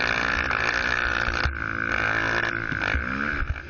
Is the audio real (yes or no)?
yes